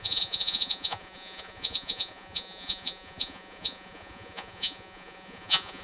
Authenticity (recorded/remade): remade